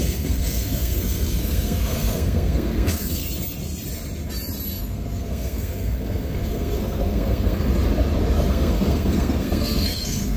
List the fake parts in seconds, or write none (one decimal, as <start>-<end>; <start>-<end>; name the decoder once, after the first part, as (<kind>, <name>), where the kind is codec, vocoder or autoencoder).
0.0-3.2 (codec, SNAC); 4.8-7.7; 8.5-10.4